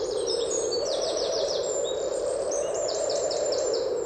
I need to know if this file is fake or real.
fake